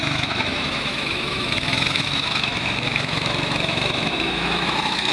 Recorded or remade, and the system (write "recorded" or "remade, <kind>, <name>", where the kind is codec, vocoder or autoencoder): remade, autoencoder, DAC-VAE